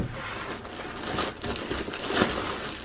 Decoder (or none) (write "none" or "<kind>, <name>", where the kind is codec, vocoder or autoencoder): none